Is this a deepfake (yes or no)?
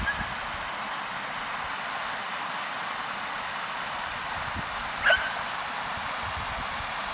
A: no